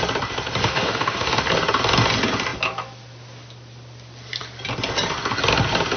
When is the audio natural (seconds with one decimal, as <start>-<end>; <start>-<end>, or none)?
0.0-0.6; 1.4-6.0